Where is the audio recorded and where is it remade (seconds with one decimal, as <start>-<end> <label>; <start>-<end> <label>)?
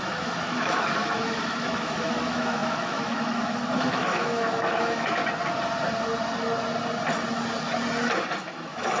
0.0-5.2 remade; 5.2-8.4 recorded; 8.4-9.0 remade